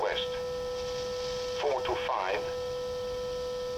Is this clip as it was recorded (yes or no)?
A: yes